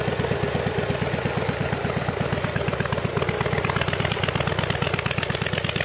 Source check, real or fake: real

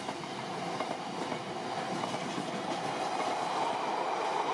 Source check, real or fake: real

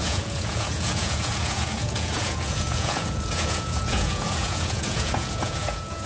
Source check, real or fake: fake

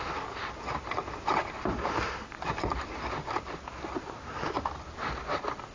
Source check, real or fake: real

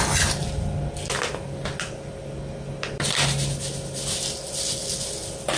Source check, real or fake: real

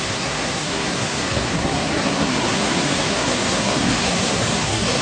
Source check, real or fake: fake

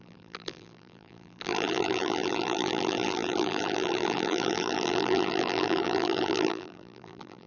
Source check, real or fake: fake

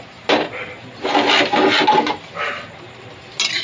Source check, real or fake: real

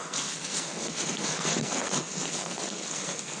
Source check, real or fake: fake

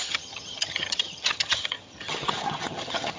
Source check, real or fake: fake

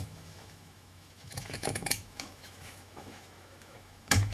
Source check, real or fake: fake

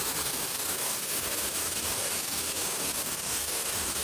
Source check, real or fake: fake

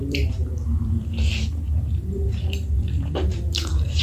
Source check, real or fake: fake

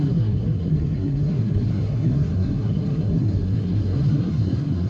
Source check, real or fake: fake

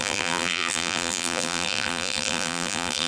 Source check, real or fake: fake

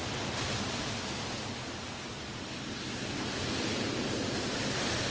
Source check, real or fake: real